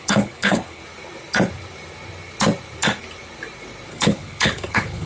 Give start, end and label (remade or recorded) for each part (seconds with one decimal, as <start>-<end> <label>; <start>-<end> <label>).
0.0-0.8 remade; 0.8-3.9 recorded; 3.9-5.1 remade